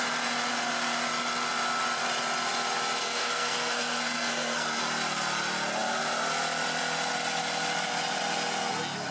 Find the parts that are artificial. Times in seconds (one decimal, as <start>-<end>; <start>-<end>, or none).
3.0-4.8